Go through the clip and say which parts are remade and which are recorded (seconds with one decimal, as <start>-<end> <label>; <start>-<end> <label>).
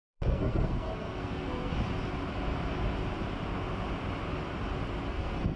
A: 0.0-1.7 remade; 1.7-5.1 recorded; 5.1-5.6 remade